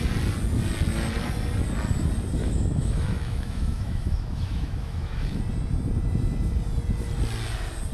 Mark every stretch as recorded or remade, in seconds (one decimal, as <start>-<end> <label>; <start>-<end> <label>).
0.0-2.4 recorded; 2.4-5.4 remade; 5.4-7.9 recorded